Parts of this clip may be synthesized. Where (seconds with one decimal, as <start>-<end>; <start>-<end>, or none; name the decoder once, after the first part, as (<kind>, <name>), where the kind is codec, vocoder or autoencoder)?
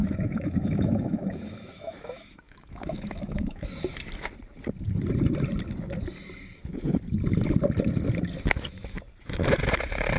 0.0-3.7 (autoencoder, DAC-VAE)